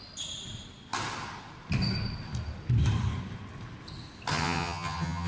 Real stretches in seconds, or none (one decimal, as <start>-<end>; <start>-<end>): 0.0-4.3